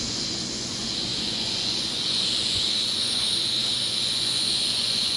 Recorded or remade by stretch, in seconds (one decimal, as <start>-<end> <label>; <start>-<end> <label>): 0.0-5.2 remade